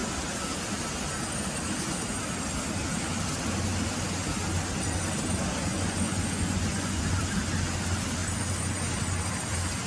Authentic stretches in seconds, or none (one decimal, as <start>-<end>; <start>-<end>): 0.0-5.7; 7.2-9.9